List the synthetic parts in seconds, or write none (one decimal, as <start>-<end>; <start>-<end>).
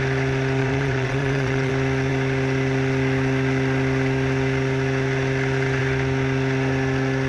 0.6-1.7